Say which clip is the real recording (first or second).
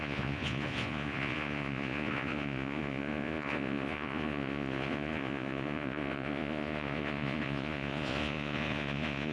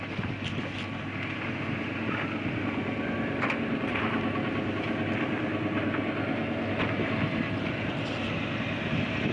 second